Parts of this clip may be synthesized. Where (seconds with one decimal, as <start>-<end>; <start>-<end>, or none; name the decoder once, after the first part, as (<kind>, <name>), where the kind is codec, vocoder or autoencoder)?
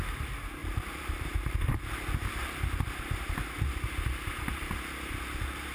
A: 0.6-1.8 (vocoder, BigVGAN v2); 2.4-3.7